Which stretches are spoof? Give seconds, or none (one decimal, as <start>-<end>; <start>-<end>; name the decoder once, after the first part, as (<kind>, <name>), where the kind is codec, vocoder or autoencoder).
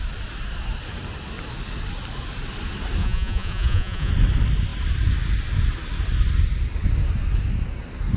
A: 3.0-4.1 (vocoder, Vocos)